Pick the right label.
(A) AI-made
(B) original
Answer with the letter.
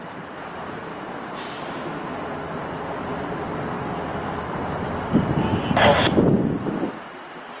B